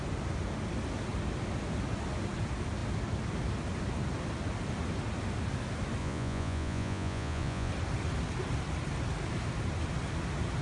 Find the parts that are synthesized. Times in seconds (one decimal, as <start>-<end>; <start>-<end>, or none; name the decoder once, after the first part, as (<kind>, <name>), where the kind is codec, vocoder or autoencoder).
6.0-7.7 (vocoder, Vocos)